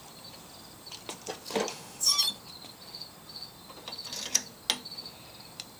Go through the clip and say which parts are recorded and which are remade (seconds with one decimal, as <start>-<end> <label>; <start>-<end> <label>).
0.0-1.7 recorded; 1.7-2.1 remade; 2.1-5.8 recorded